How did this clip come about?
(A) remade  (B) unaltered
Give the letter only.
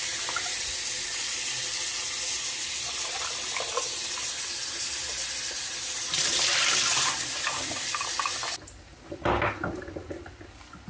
B